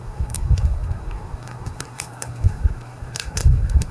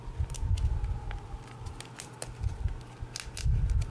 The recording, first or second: second